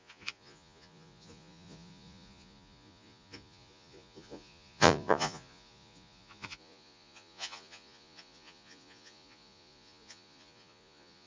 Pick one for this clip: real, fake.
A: fake